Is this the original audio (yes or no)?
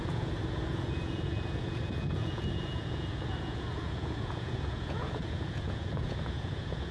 no